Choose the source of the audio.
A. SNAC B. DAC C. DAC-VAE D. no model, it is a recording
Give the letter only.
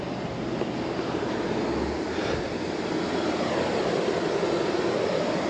D